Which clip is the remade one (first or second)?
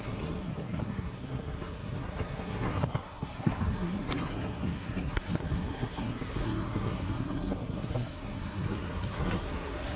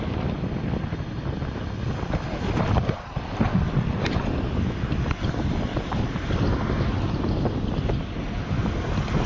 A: first